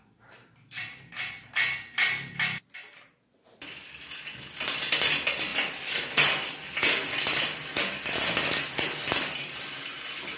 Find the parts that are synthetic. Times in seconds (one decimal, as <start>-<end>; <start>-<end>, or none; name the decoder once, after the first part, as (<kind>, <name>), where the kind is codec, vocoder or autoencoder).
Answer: 5.5-6.5 (vocoder, BigVGAN v2)